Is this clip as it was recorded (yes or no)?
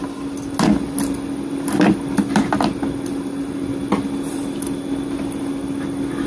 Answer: yes